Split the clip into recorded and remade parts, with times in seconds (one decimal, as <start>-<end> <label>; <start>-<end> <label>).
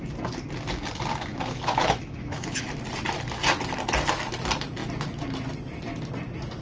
0.0-1.3 recorded; 1.3-2.6 remade; 2.6-6.6 recorded